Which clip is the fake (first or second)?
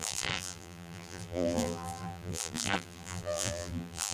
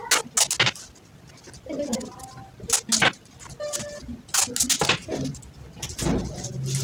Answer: first